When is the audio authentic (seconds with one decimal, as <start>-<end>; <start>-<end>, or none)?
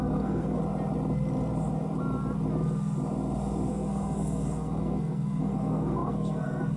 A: 0.6-3.7